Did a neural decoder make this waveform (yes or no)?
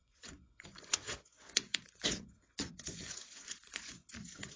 yes